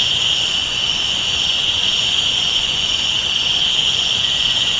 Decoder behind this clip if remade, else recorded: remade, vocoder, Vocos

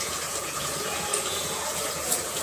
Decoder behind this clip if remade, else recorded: remade, vocoder, Vocos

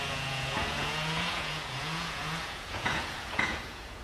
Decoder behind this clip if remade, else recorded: remade, vocoder, Vocos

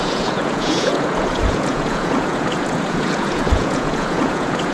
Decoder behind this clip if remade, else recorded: remade, vocoder, Vocos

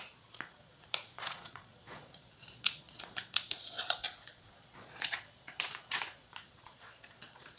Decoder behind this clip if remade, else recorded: remade, vocoder, Vocos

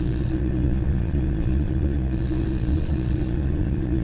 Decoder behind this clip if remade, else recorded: remade, vocoder, Vocos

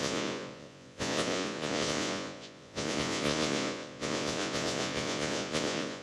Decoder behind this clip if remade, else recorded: remade, vocoder, Vocos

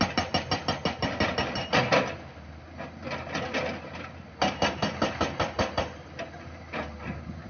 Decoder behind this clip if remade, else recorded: recorded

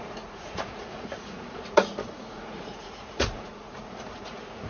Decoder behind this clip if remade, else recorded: remade, vocoder, Vocos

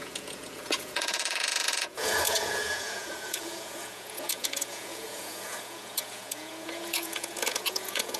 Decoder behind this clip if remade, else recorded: remade, vocoder, Vocos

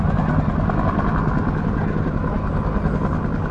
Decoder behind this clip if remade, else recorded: recorded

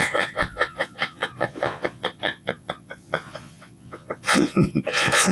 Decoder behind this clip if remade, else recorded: remade, vocoder, Vocos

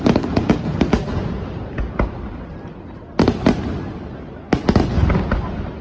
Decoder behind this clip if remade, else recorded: recorded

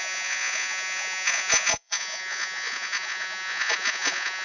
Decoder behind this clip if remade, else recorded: remade, vocoder, Vocos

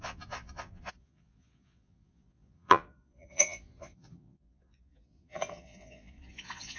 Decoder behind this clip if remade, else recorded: remade, vocoder, Vocos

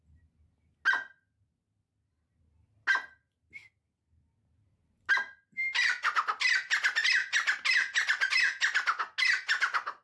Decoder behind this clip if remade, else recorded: recorded